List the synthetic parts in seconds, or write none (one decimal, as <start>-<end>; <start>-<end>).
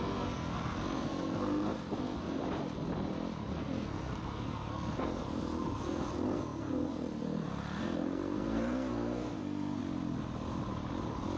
0.0-2.4; 3.5-9.8